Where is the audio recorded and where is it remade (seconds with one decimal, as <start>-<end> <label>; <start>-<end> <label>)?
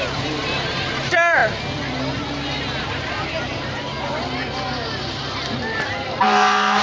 0.0-1.4 remade; 1.4-2.8 recorded; 2.8-3.9 remade; 3.9-5.6 recorded; 5.6-6.8 remade